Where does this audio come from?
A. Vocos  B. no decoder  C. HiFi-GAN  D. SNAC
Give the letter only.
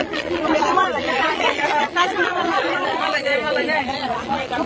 A